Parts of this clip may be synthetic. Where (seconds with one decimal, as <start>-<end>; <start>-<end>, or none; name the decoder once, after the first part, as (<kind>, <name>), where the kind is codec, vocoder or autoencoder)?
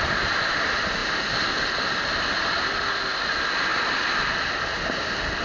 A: none